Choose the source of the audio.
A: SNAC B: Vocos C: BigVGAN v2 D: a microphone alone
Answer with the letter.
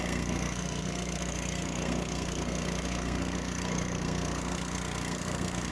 A